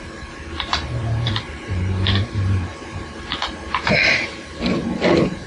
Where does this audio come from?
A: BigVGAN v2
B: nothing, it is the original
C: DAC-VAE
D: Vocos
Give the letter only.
A